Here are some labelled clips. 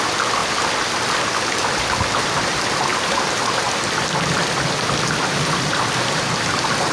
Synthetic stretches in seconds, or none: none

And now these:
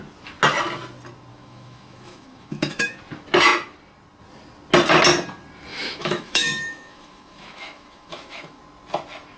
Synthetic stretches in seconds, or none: 1.3-3.0; 5.7-8.6

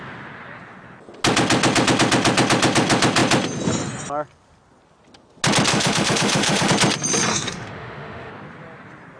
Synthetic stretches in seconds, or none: 5.7-6.7; 7.3-8.3